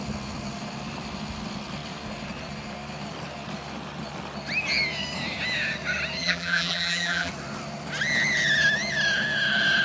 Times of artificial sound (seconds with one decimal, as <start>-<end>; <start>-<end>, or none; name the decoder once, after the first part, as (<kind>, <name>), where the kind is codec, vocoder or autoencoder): 6.2-7.3 (vocoder, BigVGAN v2)